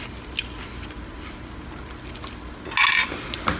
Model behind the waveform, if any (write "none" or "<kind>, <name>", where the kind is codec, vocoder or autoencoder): none